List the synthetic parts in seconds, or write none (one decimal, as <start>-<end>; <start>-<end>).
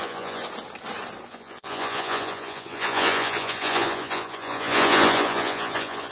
0.0-0.4; 1.3-6.1